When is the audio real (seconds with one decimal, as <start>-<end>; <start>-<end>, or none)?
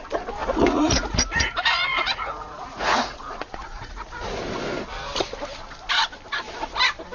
0.0-0.4; 4.4-7.1